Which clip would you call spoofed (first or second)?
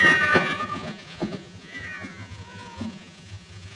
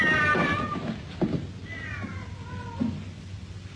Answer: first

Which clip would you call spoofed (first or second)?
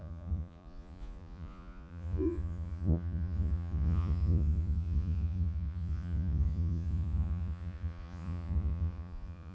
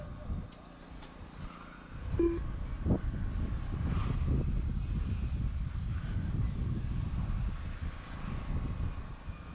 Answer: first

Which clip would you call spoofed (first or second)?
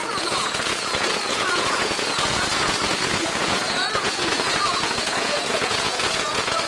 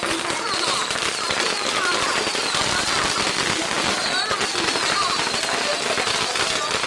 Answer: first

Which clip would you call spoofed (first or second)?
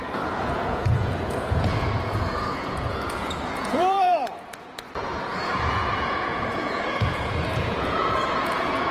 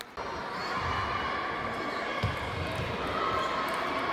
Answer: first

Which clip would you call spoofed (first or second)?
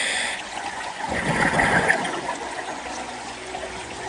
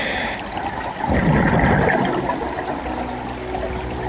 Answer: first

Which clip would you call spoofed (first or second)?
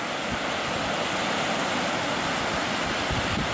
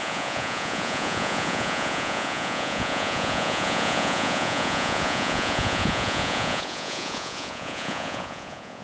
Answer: second